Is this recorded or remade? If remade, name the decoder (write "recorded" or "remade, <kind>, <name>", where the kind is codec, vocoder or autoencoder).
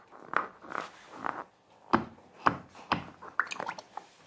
recorded